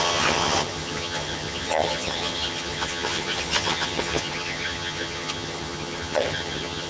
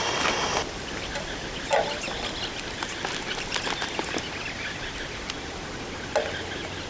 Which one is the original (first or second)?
second